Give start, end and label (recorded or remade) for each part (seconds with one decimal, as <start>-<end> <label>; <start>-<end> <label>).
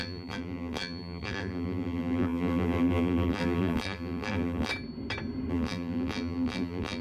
0.0-4.7 remade; 4.7-5.5 recorded; 5.5-7.0 remade